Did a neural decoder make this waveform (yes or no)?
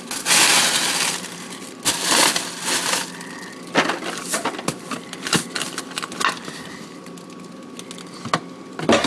no